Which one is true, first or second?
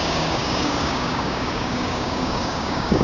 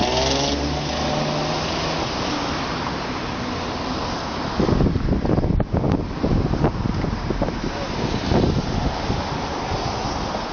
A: second